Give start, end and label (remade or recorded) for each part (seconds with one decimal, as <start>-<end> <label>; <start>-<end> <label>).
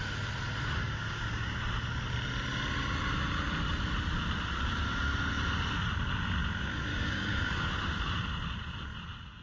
0.0-0.8 recorded; 0.8-1.6 remade; 1.6-6.9 recorded; 6.9-7.7 remade; 7.7-9.4 recorded